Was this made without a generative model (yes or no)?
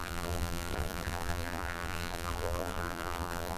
no